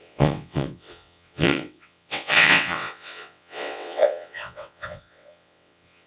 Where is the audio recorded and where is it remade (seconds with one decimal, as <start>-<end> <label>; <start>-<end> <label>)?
0.0-6.1 remade